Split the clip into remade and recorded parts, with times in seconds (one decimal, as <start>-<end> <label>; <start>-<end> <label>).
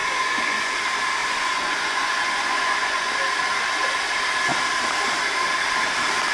0.0-0.7 remade; 0.7-1.2 recorded; 1.2-3.1 remade; 3.1-6.3 recorded